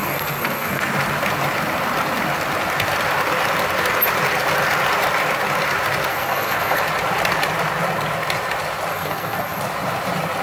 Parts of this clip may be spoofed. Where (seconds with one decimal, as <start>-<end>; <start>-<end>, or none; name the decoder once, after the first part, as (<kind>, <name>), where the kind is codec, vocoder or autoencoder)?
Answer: 0.0-0.8 (codec, SNAC); 6.1-6.8; 8.9-9.6